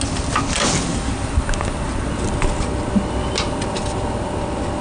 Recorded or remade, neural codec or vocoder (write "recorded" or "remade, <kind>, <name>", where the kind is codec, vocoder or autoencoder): recorded